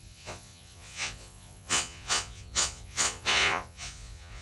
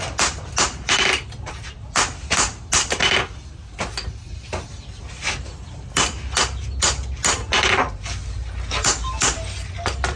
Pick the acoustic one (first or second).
second